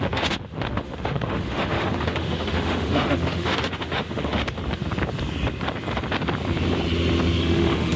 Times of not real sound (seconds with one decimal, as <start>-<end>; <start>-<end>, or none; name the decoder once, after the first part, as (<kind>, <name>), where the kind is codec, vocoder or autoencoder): 0.0-4.6 (autoencoder, DAC-VAE); 7.4-8.0